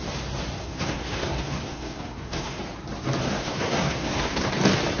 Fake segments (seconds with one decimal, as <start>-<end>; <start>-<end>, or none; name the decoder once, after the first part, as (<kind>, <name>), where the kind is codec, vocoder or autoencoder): 0.6-2.6 (codec, SNAC); 3.2-4.5